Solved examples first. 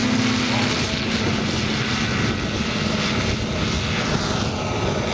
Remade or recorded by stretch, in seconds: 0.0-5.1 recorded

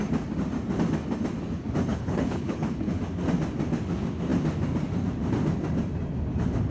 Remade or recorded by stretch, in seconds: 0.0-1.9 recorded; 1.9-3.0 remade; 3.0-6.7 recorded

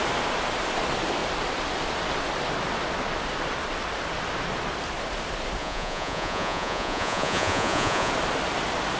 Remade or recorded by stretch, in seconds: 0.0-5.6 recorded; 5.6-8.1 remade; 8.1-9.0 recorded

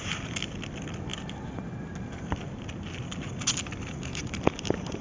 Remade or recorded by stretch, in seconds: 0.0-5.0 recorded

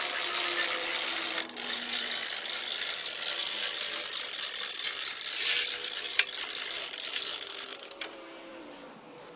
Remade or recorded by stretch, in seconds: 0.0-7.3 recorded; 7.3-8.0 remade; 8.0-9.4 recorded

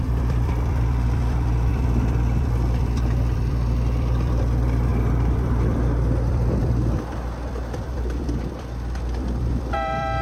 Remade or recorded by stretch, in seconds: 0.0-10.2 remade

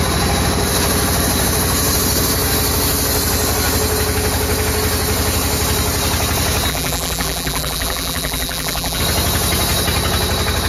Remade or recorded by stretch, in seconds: 0.0-6.7 recorded; 6.7-9.0 remade; 9.0-10.7 recorded

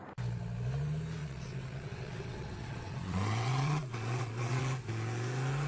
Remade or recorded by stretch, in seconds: 0.0-1.2 recorded; 1.2-4.6 remade; 4.6-5.7 recorded